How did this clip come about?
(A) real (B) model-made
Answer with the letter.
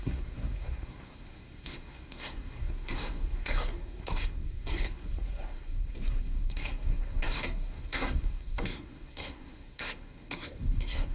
B